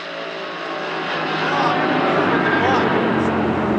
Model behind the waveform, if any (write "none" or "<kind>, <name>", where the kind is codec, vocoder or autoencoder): none